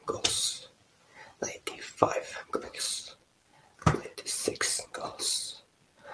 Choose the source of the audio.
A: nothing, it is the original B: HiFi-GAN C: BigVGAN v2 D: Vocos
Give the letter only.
A